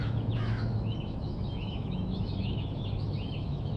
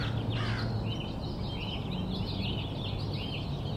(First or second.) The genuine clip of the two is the second